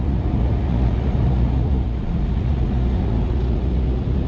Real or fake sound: fake